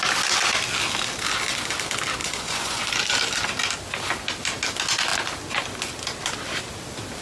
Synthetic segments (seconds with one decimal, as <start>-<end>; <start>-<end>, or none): 2.2-2.8